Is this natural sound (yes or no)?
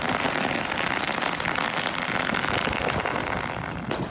yes